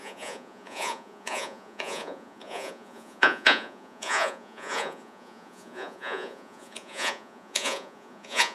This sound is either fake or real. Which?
fake